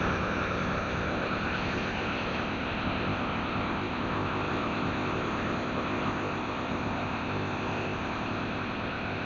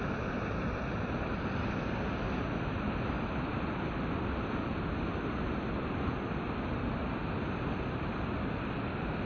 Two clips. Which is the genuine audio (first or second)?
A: second